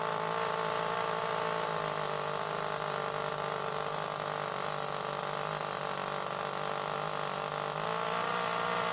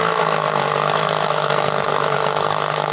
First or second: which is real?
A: first